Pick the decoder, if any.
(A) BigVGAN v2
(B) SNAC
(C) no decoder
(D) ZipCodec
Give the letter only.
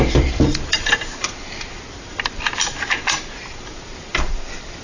A